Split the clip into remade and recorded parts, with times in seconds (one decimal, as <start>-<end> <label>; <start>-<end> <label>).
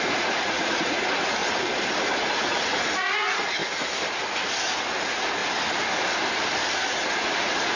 0.0-1.4 remade; 1.4-2.2 recorded; 2.2-3.6 remade; 3.6-5.0 recorded; 5.0-5.4 remade; 5.4-7.1 recorded; 7.1-7.8 remade